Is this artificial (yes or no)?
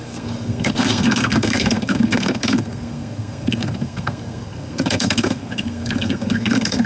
yes